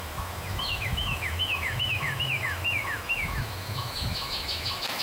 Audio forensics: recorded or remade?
remade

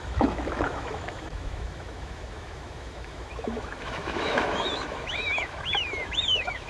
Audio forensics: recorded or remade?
remade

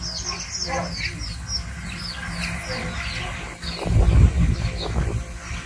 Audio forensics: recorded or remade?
recorded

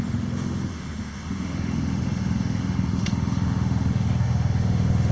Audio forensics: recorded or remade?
remade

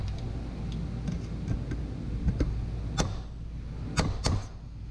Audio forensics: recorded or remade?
recorded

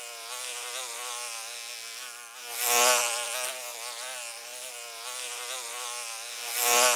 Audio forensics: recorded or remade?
recorded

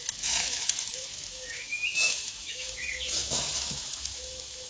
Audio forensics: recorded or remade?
remade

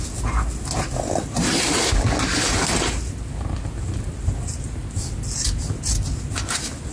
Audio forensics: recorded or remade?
recorded